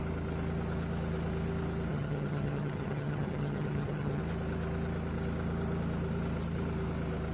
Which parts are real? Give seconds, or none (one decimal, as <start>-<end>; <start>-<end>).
0.0-1.9; 4.2-7.3